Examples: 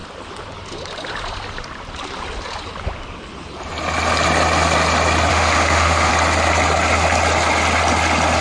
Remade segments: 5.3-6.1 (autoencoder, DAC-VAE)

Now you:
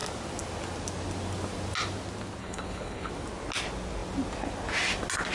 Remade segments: 2.4-3.1 (codec, HILCodec)

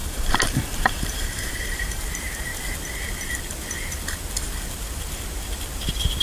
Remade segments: 0.0-2.0 (vocoder, BigVGAN v2)

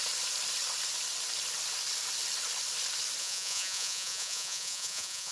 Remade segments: 3.2-5.3 (vocoder, Vocos)

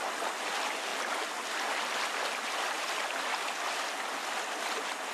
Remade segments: none

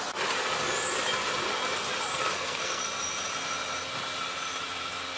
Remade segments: 2.1-2.8 (codec, SNAC)

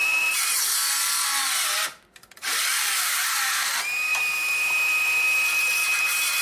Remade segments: 0.0-0.7 (vocoder, BigVGAN v2); 2.7-3.3; 4.1-6.4